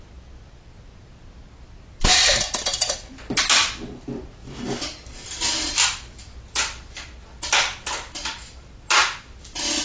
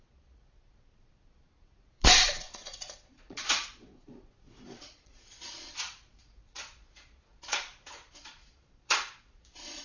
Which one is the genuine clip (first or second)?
first